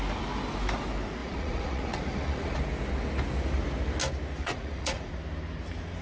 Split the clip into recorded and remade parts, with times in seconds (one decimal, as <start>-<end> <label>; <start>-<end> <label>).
0.0-1.2 recorded; 1.2-2.6 remade; 2.6-4.4 recorded; 4.4-5.1 remade; 5.1-6.0 recorded